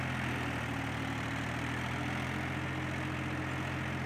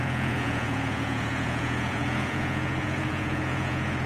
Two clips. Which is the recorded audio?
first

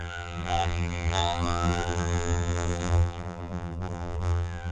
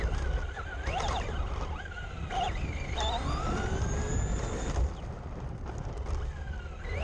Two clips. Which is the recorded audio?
second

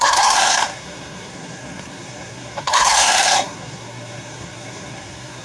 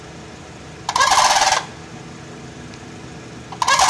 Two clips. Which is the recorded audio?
second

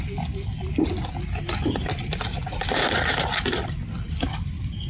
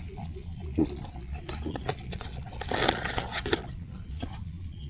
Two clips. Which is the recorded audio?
first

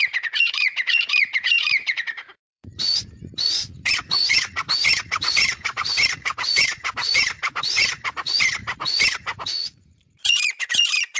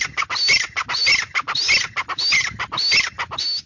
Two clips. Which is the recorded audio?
second